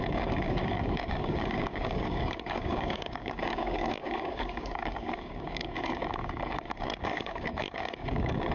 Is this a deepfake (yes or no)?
yes